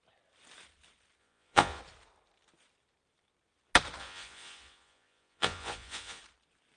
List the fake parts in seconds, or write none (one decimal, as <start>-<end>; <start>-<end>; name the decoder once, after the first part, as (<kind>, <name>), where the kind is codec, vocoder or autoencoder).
1.2-1.8 (vocoder, Vocos); 4.0-6.2